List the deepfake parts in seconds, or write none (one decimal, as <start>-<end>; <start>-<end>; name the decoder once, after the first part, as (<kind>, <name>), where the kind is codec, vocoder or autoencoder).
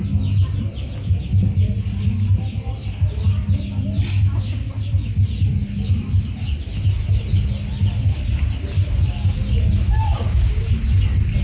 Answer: 9.8-10.7 (codec, DAC)